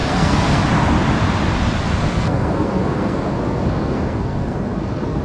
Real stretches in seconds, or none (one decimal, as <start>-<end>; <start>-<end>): 0.6-2.0